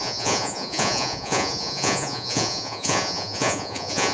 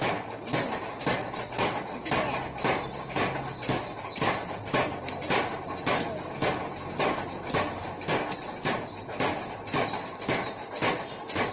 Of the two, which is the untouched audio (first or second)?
second